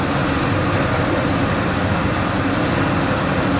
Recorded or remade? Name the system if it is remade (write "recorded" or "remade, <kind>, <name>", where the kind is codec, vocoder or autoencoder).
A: recorded